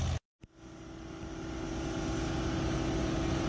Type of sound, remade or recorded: recorded